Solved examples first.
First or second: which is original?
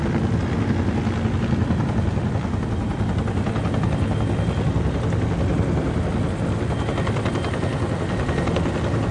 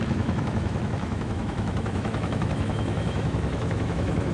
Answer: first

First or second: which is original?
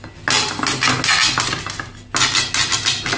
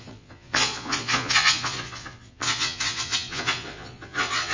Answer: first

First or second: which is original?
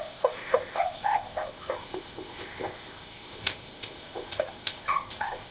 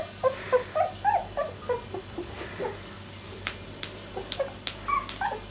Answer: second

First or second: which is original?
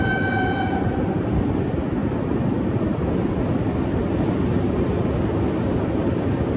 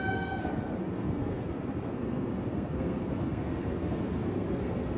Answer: first